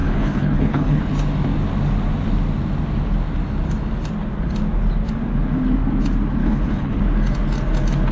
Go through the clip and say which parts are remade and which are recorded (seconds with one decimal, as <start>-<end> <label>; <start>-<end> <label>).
0.0-1.0 remade; 1.0-6.4 recorded; 6.4-7.0 remade; 7.0-8.1 recorded